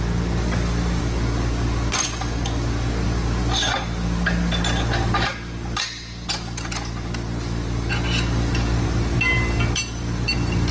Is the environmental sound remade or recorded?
recorded